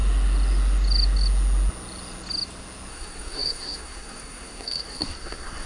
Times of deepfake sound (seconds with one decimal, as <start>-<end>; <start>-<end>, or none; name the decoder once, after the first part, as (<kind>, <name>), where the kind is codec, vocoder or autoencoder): 2.9-5.7 (codec, SNAC)